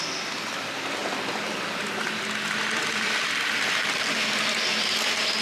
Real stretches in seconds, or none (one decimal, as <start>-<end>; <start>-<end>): 0.0-5.4